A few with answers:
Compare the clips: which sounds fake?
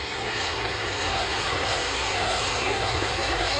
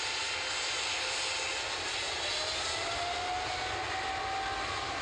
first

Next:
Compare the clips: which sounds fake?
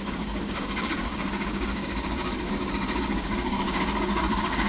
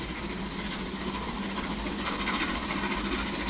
first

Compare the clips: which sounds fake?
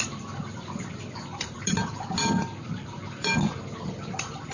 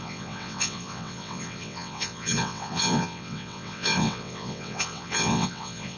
second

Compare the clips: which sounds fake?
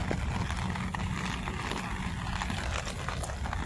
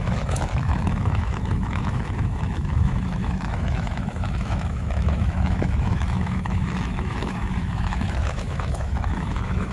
second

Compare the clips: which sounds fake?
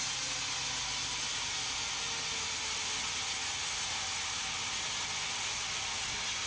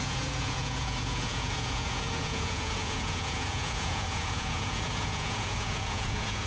second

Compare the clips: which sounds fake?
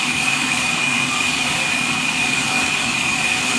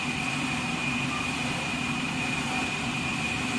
first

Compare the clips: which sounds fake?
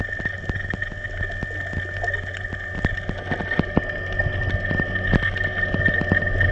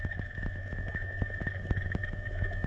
second